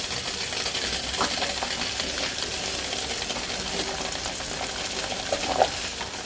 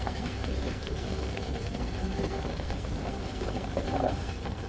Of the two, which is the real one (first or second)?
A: first